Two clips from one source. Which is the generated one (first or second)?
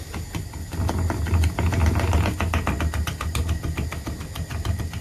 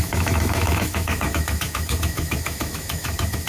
second